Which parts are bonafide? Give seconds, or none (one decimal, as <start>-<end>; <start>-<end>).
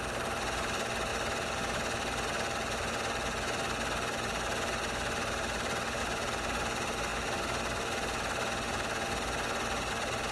0.0-10.3